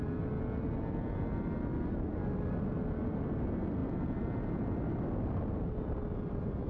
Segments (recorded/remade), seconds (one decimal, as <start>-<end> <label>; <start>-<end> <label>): 0.0-6.7 recorded